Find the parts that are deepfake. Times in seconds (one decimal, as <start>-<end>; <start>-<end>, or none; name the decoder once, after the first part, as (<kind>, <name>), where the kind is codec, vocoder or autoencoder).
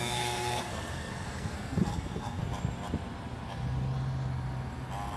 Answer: 0.0-2.4 (codec, SNAC)